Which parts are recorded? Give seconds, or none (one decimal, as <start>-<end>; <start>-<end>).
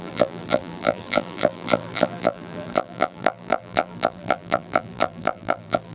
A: none